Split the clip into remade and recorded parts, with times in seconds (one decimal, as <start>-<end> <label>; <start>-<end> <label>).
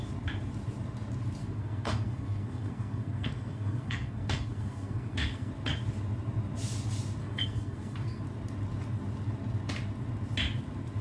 0.0-1.4 recorded; 1.4-5.5 remade; 5.5-7.2 recorded; 7.2-8.2 remade; 8.2-11.0 recorded